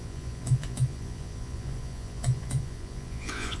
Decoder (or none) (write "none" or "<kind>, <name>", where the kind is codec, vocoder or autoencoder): vocoder, Vocos